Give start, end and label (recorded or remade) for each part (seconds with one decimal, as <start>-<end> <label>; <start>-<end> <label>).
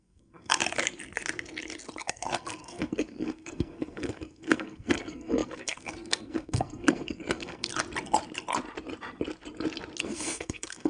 0.0-0.6 remade; 0.6-2.0 recorded; 2.0-7.7 remade; 7.7-10.0 recorded; 10.0-10.9 remade